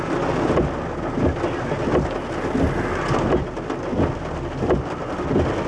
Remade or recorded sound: recorded